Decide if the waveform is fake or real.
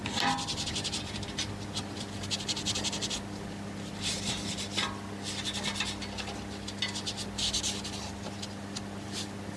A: real